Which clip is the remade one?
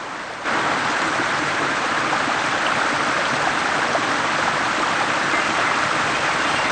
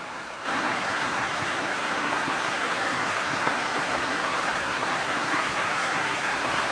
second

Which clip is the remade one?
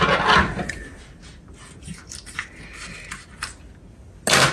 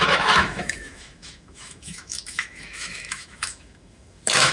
second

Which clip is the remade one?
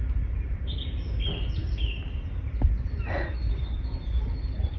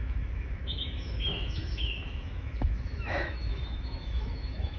second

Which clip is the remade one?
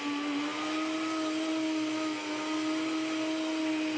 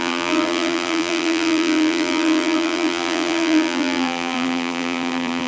second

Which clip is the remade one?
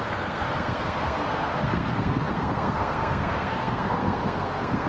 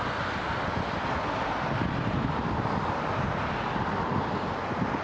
first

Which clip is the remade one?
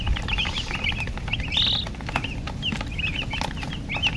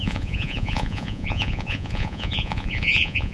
second